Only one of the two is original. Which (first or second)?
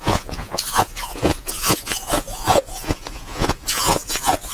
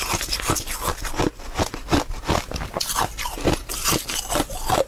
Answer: second